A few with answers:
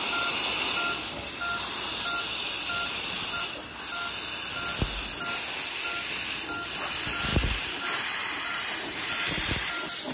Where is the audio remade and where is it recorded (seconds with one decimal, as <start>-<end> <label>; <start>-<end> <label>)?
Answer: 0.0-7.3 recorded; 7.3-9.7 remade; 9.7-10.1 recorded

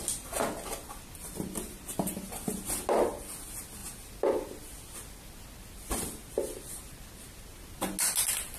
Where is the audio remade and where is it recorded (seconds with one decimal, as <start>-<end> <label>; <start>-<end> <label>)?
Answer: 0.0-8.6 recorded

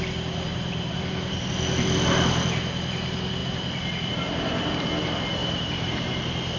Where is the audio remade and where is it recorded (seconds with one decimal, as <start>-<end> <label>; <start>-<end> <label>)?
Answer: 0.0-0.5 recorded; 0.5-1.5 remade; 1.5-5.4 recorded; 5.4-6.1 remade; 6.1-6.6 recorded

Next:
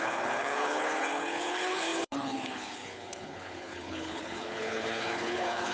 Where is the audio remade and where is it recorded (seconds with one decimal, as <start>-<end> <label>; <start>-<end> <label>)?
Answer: 0.0-5.7 remade

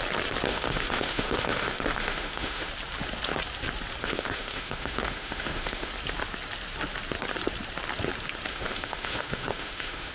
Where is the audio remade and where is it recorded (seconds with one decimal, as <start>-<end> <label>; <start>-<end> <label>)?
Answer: 0.0-0.5 recorded; 0.5-2.7 remade; 2.7-4.0 recorded; 4.0-5.9 remade; 5.9-8.5 recorded; 8.5-10.1 remade

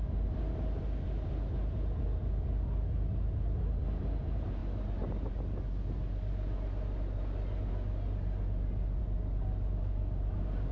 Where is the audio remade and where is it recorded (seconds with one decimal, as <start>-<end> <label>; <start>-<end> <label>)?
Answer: 0.0-10.7 recorded

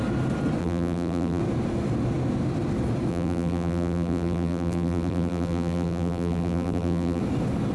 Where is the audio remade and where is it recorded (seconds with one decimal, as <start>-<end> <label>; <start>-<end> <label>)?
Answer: 0.0-0.6 recorded; 0.6-1.4 remade; 1.4-3.1 recorded; 3.1-7.2 remade; 7.2-7.7 recorded